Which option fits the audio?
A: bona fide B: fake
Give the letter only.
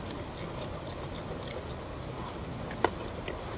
A